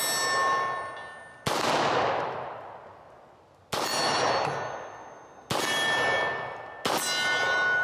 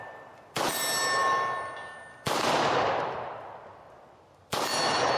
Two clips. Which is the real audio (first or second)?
first